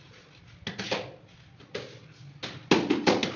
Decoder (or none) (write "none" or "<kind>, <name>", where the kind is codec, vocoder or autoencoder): none